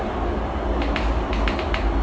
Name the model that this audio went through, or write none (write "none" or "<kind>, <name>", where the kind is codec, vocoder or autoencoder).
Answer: none